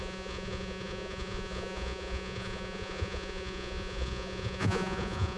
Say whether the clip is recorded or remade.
remade